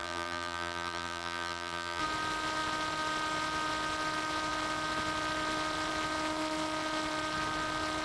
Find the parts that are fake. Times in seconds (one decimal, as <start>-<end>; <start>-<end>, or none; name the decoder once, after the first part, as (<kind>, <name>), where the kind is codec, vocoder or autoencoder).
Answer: 0.0-2.0 (vocoder, BigVGAN v2)